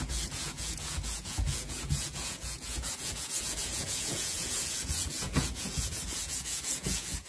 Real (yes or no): no